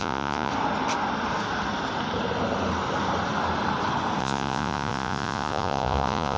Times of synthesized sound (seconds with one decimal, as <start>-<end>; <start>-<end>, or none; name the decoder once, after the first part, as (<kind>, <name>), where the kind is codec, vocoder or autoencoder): 0.0-0.5 (vocoder, Vocos); 4.2-6.4